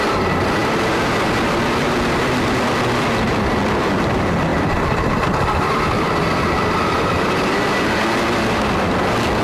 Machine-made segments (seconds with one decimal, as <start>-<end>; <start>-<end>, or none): 0.6-4.1; 4.5-7.3